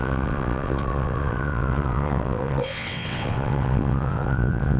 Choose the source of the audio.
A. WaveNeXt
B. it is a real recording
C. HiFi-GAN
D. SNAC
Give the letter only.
A